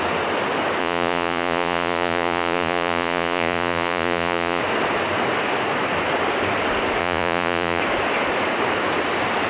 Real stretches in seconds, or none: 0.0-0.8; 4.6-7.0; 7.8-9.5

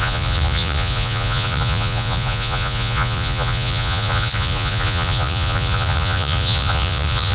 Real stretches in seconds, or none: none